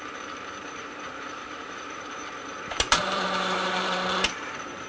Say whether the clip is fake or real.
fake